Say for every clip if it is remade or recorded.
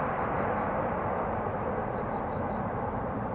recorded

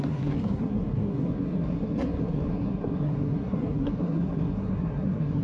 remade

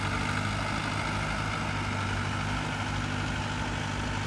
recorded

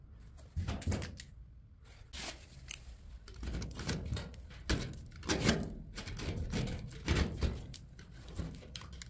recorded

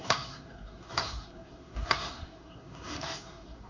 remade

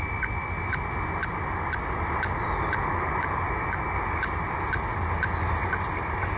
recorded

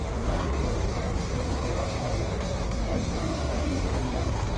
remade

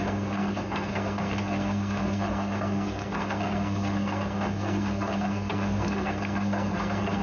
remade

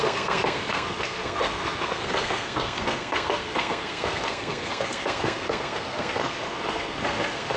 remade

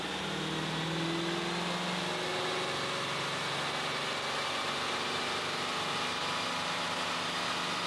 recorded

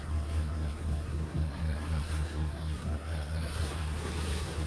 remade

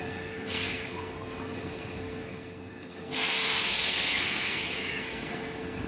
remade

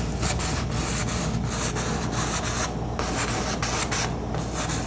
recorded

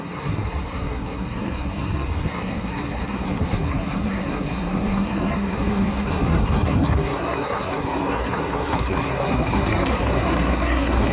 remade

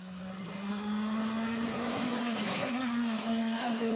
remade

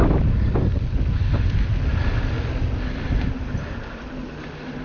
recorded